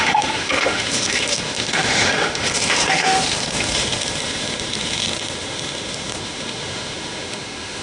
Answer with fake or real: fake